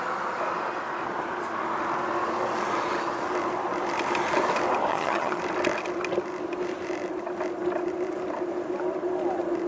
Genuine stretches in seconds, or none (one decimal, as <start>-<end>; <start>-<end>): 0.0-4.9; 5.4-9.7